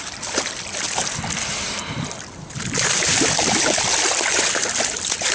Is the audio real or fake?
real